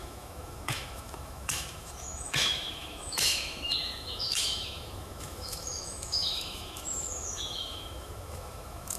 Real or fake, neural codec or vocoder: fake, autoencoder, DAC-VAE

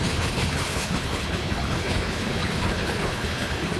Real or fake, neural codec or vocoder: fake, codec, HILCodec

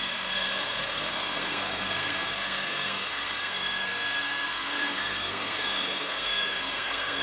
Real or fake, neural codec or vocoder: fake, codec, SNAC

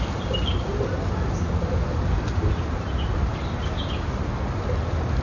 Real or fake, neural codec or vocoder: real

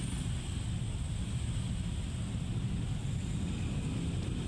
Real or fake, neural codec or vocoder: real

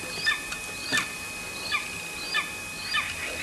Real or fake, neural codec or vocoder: real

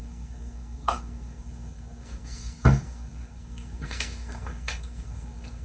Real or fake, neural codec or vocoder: fake, codec, SNAC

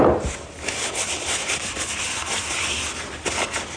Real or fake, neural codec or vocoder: real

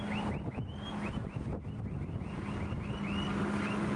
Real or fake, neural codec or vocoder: real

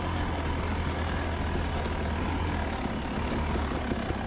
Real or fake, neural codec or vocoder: real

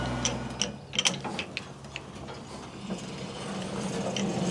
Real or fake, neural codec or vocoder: real